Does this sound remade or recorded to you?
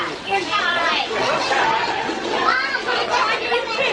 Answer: remade